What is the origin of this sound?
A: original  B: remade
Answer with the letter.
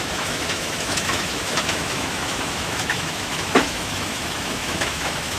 B